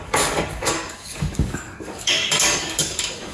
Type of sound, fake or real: fake